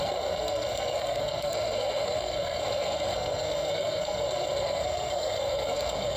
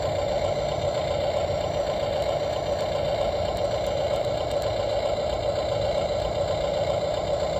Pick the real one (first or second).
second